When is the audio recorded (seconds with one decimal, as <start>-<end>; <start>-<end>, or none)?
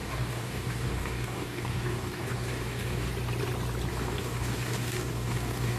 3.1-3.9